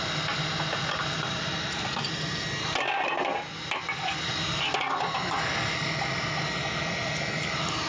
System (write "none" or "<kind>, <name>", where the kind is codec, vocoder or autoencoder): none